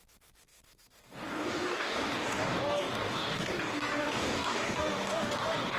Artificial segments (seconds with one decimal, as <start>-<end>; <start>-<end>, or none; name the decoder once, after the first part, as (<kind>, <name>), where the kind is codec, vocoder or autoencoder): 0.0-5.8 (codec, DAC)